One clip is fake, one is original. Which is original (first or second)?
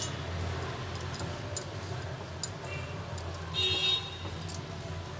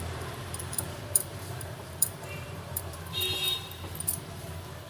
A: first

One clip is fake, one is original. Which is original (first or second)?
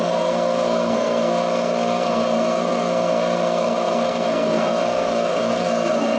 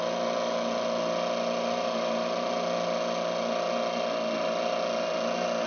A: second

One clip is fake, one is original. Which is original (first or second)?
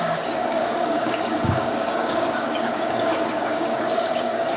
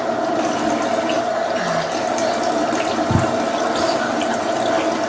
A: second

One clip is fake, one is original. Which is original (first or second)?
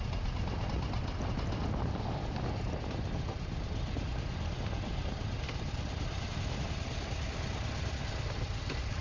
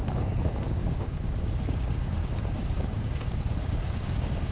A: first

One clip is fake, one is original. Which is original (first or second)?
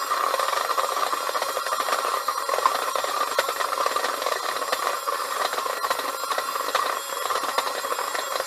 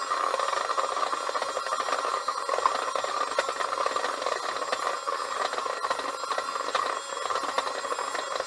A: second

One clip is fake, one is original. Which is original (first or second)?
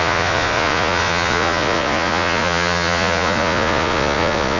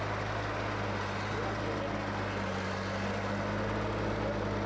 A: second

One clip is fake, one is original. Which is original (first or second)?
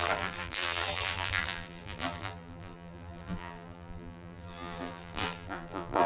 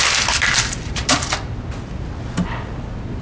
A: second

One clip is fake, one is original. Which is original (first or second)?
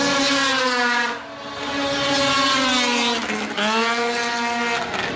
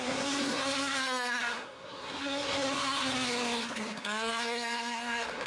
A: first